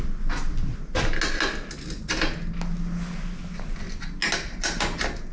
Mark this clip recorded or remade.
recorded